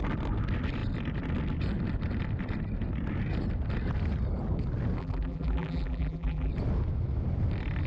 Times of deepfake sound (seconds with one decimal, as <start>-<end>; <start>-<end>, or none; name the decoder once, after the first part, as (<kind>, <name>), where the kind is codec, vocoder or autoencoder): 5.0-6.5 (vocoder, BigVGAN v2)